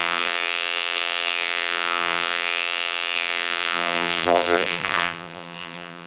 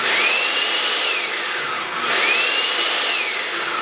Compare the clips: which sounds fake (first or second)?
first